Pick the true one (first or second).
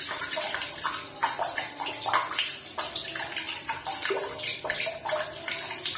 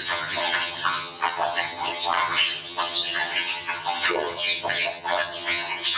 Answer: first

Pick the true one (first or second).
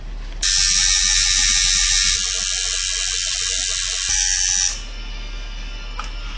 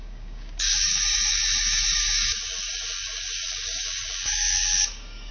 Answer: first